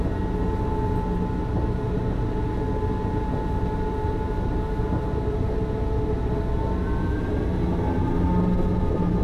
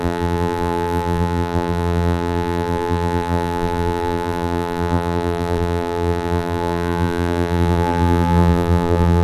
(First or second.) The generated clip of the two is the second